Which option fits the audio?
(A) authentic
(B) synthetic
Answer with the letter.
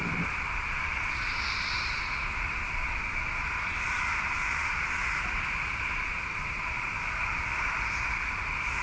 B